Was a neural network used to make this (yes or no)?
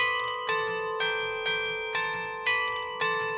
no